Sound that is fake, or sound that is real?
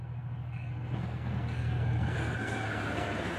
fake